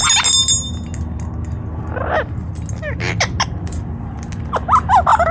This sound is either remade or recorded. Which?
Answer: recorded